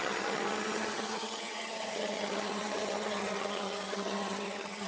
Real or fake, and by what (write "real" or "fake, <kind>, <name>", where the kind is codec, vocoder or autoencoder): fake, vocoder, HiFi-GAN